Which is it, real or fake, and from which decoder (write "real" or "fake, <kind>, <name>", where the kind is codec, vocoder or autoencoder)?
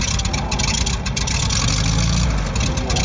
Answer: real